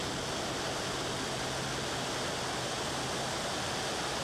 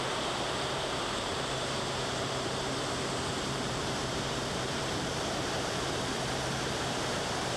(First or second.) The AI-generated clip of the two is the second